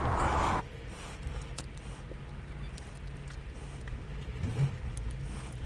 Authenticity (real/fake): real